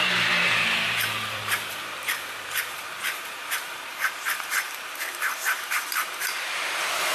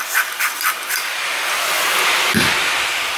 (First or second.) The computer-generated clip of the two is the first